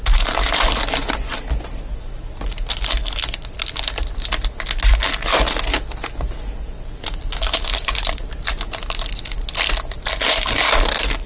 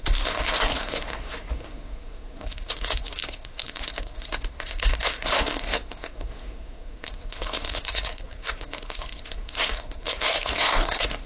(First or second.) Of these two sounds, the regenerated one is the second